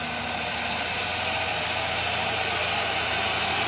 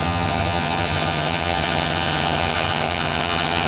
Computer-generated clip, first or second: second